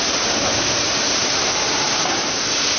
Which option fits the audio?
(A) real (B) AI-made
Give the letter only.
B